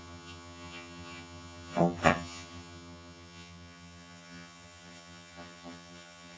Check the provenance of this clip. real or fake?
fake